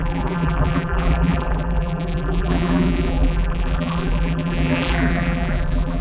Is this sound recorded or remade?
remade